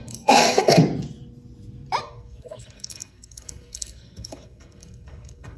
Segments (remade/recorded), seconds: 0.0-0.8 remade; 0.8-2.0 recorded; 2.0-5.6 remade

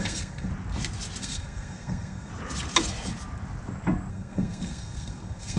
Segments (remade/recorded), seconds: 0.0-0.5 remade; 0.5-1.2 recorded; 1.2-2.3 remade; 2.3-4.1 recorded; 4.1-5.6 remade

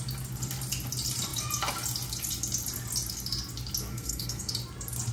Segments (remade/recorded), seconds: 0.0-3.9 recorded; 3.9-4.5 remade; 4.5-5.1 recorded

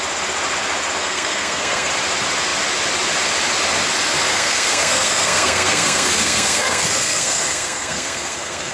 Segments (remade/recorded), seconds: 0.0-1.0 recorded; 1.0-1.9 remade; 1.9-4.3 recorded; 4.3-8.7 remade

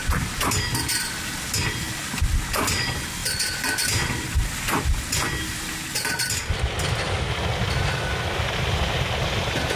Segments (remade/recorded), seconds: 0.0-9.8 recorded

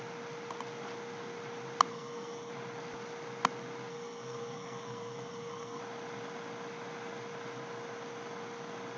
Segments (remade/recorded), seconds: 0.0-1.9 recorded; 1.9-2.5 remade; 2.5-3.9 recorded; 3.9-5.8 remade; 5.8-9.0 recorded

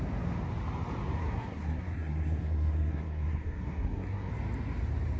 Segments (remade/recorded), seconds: 0.0-1.2 recorded; 1.2-4.3 remade; 4.3-5.2 recorded